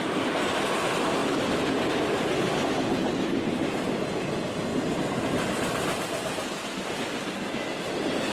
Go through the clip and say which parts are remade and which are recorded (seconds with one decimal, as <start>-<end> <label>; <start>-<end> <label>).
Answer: 0.0-1.2 recorded; 1.2-1.9 remade; 1.9-3.0 recorded; 3.0-3.9 remade; 3.9-4.7 recorded; 4.7-6.9 remade; 6.9-8.3 recorded